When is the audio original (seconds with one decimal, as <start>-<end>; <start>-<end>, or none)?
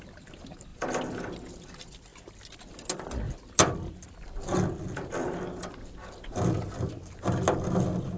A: 0.0-8.2